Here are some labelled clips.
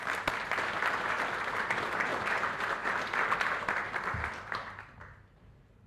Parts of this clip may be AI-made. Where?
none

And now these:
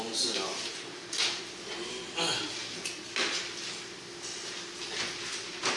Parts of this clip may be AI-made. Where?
0.5-1.1 (vocoder, BigVGAN v2)

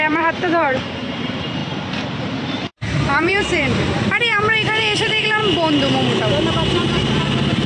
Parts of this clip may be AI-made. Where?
0.0-1.6 (vocoder, BigVGAN v2); 2.5-5.4; 7.1-7.7

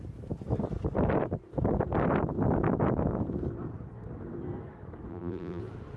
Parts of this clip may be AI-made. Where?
5.1-5.6 (vocoder, BigVGAN v2)

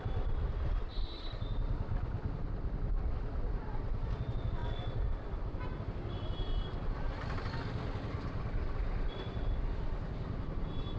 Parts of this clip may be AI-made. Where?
0.0-4.6 (vocoder, BigVGAN v2); 9.6-11.0

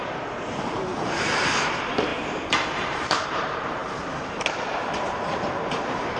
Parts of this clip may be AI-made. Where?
0.0-6.2 (vocoder, BigVGAN v2)

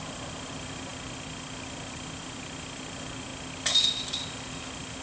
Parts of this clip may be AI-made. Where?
none